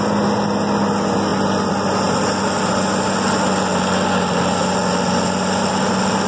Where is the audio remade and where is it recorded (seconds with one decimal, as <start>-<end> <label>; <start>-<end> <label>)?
0.0-6.3 recorded